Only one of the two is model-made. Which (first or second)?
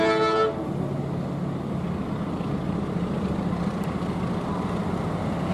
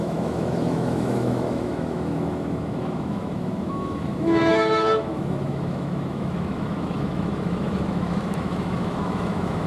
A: second